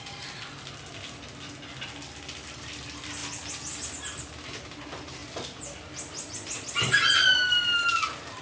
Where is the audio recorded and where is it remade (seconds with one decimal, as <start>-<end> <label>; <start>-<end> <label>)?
0.0-8.4 recorded